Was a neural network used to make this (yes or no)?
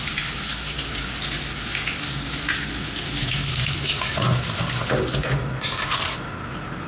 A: no